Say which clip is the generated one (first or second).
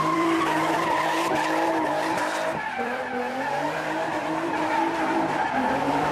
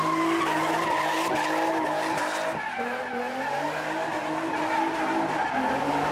first